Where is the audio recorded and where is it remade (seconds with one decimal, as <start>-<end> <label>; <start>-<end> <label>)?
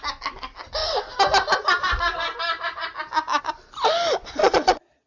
0.0-4.4 recorded; 4.4-5.1 remade